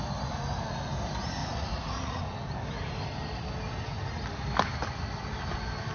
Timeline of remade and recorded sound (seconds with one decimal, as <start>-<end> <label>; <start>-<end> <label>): 0.0-1.4 recorded; 1.4-2.2 remade; 2.2-5.9 recorded